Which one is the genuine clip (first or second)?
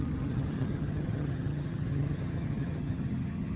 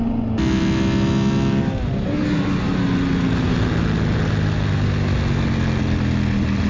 second